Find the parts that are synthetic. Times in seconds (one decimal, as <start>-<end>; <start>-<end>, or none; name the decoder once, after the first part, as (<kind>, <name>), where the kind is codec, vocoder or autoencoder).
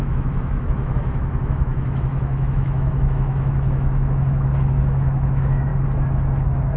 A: 0.0-5.7 (autoencoder, DAC-VAE)